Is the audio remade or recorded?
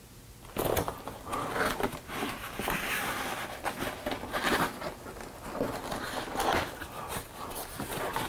recorded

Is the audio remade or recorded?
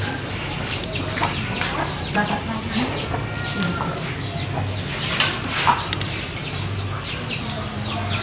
recorded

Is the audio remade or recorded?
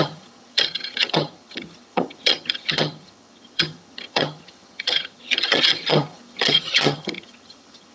remade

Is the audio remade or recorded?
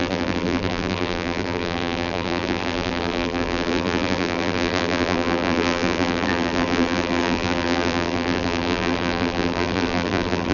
remade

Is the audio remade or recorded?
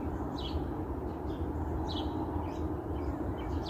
recorded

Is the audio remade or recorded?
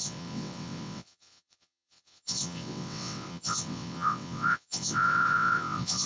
remade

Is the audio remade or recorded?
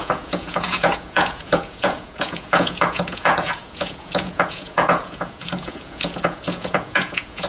remade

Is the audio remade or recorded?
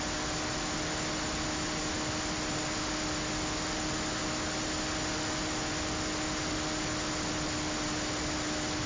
recorded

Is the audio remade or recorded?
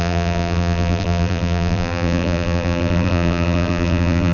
remade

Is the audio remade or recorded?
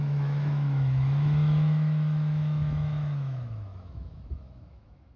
remade